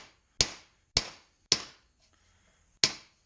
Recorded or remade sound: recorded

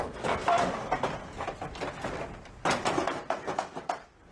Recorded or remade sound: recorded